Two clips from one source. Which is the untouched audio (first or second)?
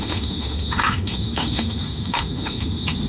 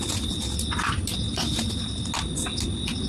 second